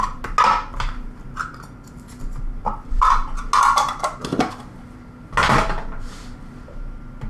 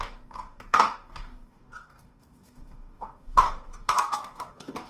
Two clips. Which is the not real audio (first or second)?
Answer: second